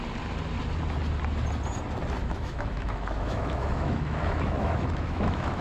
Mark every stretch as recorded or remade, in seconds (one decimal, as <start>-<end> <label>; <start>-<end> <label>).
0.0-2.2 recorded; 2.2-5.6 remade